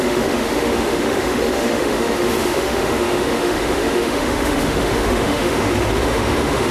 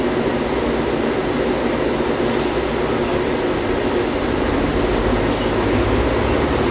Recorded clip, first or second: second